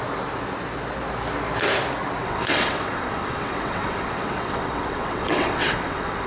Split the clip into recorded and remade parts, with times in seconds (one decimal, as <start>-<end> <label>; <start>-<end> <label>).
0.0-2.2 recorded; 2.2-6.3 remade